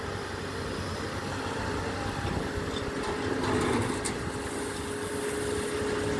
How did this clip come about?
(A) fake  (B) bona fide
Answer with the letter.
B